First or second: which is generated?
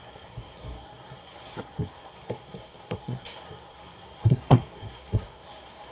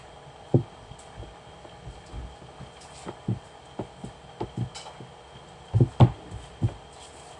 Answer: first